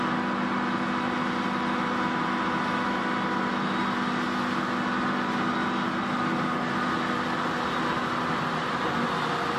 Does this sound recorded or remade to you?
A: recorded